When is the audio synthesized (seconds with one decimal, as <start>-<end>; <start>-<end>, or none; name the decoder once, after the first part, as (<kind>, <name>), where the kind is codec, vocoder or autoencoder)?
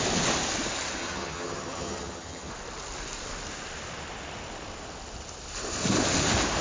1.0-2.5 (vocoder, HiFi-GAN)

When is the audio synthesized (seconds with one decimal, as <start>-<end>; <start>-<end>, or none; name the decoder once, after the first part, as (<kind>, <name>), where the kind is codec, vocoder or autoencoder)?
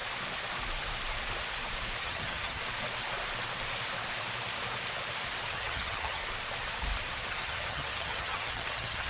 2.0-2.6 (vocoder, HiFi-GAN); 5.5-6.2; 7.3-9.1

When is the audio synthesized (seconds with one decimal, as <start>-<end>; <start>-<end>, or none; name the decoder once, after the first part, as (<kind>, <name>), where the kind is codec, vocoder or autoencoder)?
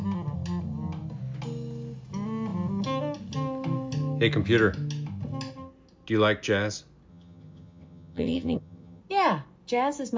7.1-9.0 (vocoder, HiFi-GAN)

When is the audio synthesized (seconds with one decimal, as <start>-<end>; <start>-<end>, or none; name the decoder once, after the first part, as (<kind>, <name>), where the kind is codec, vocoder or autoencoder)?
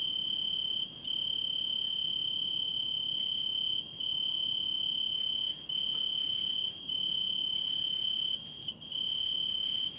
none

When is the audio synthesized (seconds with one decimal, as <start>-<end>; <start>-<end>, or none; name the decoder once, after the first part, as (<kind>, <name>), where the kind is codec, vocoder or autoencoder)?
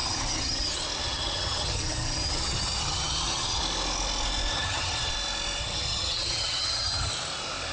0.0-0.6 (vocoder, HiFi-GAN); 1.0-3.6; 4.5-5.1; 5.6-7.1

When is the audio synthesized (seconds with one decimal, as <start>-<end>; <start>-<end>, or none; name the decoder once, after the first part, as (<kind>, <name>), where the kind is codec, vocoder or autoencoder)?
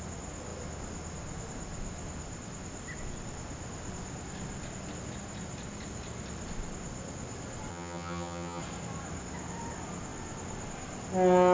7.7-8.6 (vocoder, HiFi-GAN)